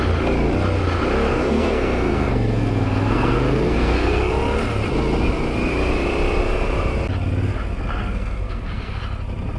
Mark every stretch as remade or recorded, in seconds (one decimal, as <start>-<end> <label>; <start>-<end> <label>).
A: 0.0-1.3 recorded; 1.3-4.3 remade; 4.3-7.9 recorded; 7.9-9.0 remade; 9.0-9.6 recorded